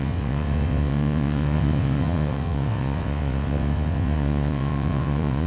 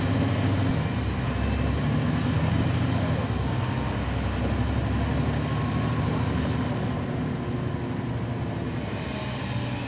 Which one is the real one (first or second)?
second